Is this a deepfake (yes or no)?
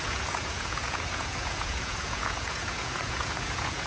yes